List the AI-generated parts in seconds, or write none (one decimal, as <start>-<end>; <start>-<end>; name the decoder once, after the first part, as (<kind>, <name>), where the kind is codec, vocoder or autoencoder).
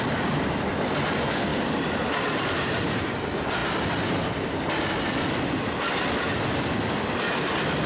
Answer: none